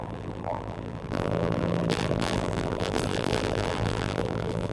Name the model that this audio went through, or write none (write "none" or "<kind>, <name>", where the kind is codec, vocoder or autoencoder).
vocoder, BigVGAN v2